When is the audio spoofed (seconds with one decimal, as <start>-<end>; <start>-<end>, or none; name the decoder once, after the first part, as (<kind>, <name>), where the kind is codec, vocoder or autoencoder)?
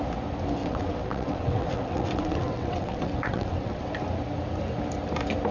0.6-3.9 (vocoder, WaveNeXt)